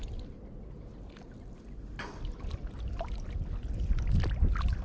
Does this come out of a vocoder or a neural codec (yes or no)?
no